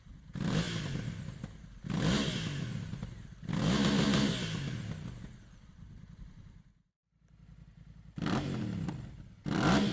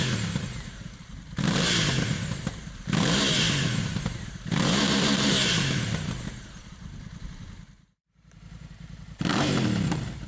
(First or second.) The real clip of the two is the first